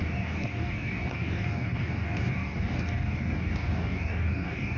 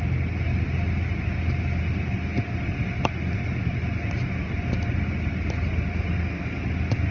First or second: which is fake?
first